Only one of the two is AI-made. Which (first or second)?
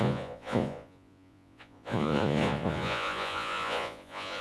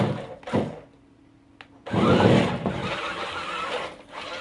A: first